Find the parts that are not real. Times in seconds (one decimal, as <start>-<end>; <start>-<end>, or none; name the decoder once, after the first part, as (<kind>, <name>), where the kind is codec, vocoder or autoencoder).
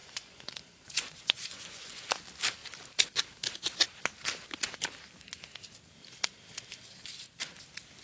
0.0-2.1 (vocoder, Vocos)